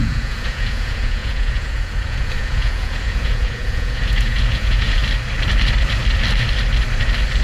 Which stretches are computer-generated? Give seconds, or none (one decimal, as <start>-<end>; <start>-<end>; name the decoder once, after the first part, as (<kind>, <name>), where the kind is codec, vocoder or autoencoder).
0.0-5.0 (vocoder, Vocos)